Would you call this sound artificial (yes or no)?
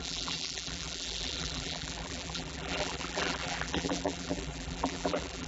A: yes